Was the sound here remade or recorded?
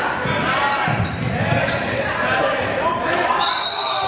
remade